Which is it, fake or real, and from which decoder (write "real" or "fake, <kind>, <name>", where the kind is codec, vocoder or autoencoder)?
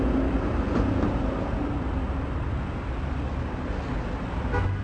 real